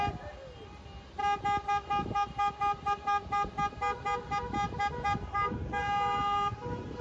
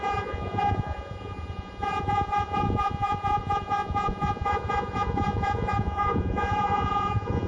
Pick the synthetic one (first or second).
second